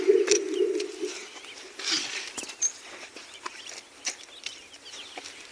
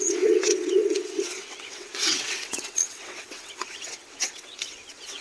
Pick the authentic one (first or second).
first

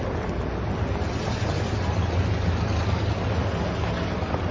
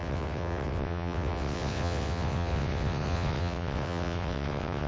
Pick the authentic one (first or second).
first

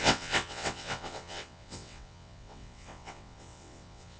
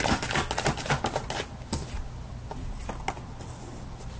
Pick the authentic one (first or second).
second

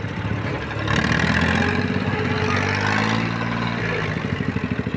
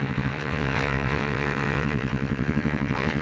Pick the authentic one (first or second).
first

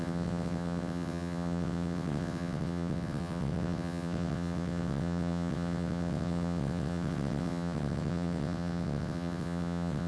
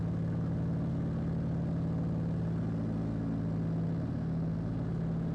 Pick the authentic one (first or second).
second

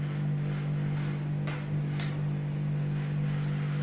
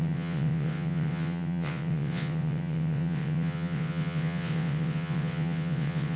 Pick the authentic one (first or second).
first